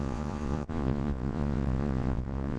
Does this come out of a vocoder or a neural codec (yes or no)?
yes